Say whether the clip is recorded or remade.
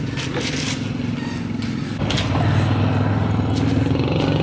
recorded